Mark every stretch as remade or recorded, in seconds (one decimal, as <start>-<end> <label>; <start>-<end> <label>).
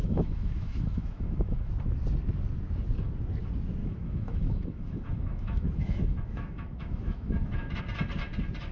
0.0-1.7 remade; 1.7-3.8 recorded; 3.8-7.8 remade; 7.8-8.7 recorded